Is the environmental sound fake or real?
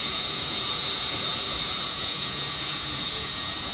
fake